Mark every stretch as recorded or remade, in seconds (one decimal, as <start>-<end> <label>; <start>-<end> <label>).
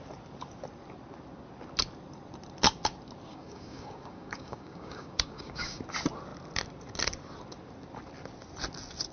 0.0-3.3 recorded; 3.3-5.8 remade; 5.8-9.1 recorded